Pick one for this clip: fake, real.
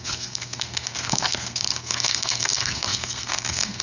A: fake